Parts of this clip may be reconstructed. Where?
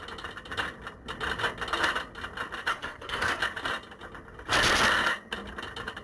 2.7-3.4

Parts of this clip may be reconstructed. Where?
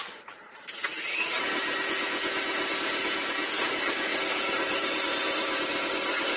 none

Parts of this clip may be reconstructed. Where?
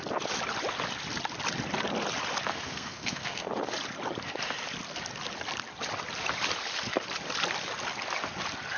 2.5-3.5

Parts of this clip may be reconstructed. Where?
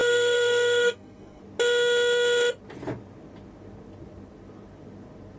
0.0-1.4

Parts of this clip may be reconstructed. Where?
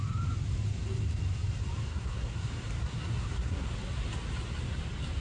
1.9-2.5; 2.9-3.7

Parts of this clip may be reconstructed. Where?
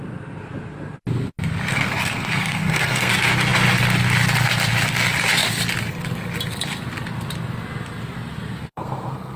1.7-3.1; 8.6-9.4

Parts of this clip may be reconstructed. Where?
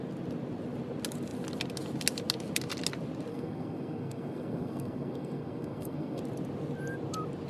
3.3-6.2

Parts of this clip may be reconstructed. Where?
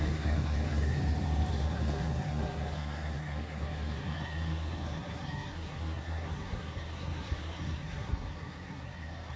0.0-1.0; 1.5-9.4